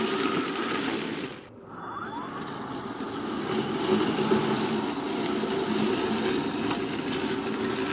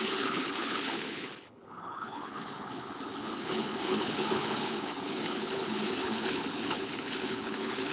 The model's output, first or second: second